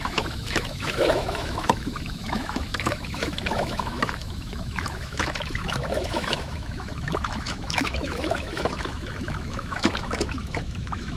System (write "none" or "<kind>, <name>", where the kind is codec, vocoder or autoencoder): autoencoder, DAC-VAE